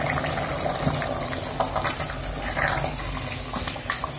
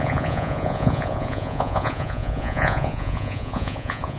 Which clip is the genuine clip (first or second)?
first